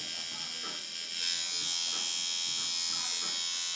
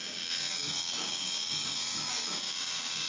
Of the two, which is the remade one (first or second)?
second